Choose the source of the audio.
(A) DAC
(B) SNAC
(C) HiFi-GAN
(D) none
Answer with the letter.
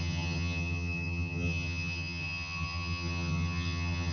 C